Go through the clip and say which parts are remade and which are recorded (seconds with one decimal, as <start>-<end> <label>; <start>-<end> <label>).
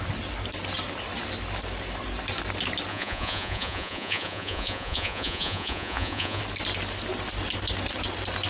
0.0-2.9 recorded; 2.9-6.4 remade; 6.4-8.5 recorded